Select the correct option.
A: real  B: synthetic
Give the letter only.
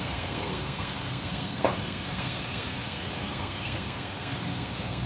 B